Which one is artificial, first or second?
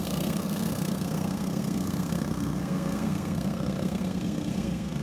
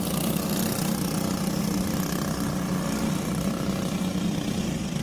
first